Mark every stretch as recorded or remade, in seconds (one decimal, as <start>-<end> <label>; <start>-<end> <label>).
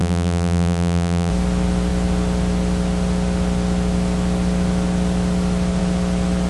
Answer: 0.0-1.3 remade; 1.3-6.5 recorded